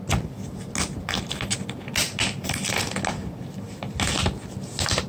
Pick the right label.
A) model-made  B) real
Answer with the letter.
B